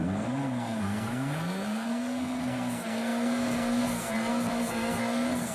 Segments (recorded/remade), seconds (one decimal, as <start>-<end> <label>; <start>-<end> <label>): 0.0-5.5 remade